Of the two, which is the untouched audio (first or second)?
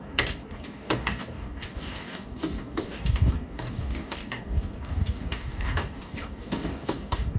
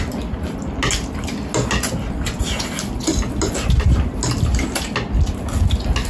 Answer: second